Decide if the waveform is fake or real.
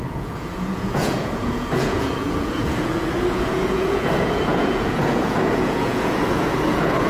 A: fake